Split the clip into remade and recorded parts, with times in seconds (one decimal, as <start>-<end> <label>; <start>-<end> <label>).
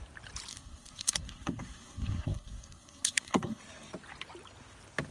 0.0-0.5 recorded; 0.5-3.6 remade; 3.6-5.1 recorded